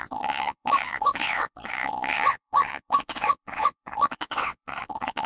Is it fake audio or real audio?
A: fake